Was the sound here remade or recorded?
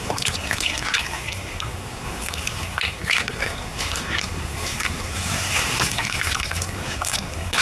remade